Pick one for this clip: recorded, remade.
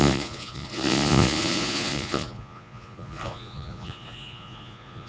remade